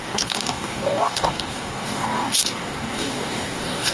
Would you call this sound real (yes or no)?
no